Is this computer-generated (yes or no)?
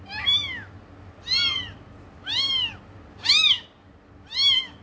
no